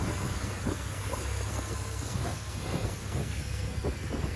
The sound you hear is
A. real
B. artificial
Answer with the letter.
B